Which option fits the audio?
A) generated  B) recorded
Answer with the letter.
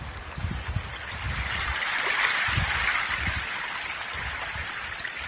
B